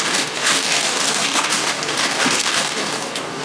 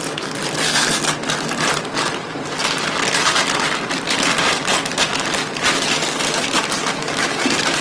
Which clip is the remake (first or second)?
first